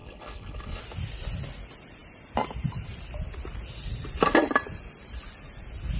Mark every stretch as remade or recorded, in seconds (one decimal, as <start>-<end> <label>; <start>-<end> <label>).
0.0-0.8 remade; 0.8-6.0 recorded